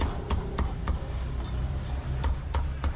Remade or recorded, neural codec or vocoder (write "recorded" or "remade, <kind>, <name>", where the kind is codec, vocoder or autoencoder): remade, vocoder, BigVGAN v2